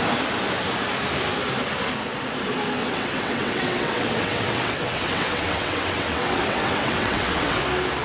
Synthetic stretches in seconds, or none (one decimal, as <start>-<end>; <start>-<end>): 2.8-7.6

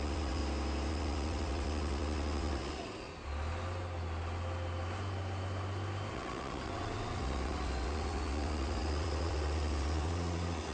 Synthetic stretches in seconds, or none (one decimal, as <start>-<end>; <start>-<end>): 0.0-0.4; 0.9-3.1; 6.1-10.7

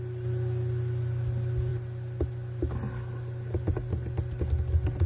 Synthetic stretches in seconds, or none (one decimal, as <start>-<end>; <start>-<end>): none

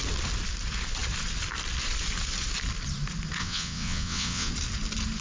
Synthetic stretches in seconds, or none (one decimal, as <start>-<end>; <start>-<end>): 3.4-4.5

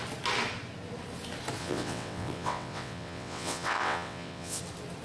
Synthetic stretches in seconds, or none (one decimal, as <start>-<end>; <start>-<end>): 1.6-4.6

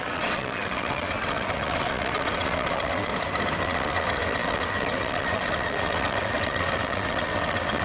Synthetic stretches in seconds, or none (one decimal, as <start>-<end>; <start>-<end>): 0.0-3.1; 3.6-7.8

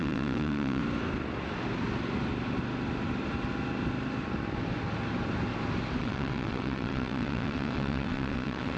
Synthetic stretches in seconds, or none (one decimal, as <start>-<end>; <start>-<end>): 0.0-0.8; 6.0-8.8